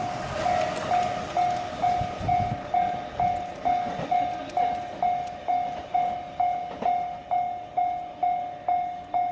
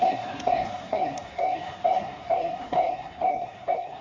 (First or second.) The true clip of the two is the first